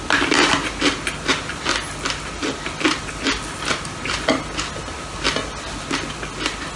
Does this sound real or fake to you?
real